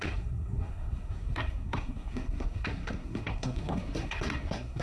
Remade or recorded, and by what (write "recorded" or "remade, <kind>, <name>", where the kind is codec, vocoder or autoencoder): remade, codec, SNAC